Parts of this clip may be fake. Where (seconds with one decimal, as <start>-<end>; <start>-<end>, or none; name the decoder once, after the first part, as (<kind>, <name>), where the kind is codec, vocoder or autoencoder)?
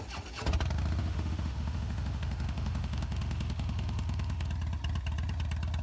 1.0-4.5 (autoencoder, DAC-VAE)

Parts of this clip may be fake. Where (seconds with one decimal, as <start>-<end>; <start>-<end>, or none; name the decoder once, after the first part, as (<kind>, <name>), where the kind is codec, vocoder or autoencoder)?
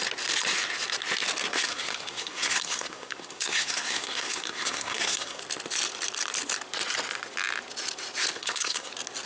1.5-5.4 (codec, SNAC); 8.4-8.9